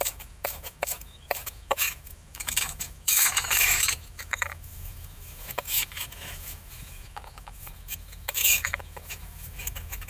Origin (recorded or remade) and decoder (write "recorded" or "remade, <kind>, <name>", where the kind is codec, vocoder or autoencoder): remade, autoencoder, DAC-VAE